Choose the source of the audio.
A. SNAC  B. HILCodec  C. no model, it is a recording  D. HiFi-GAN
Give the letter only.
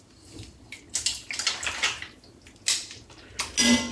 C